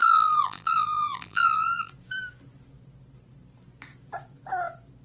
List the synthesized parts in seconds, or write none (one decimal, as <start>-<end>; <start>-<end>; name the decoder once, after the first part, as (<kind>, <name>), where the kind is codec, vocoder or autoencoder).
0.0-1.9 (vocoder, BigVGAN v2)